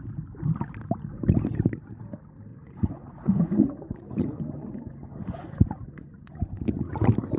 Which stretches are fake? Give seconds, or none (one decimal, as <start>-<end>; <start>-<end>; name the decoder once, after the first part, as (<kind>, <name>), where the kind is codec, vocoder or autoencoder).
2.5-6.9 (vocoder, Vocos)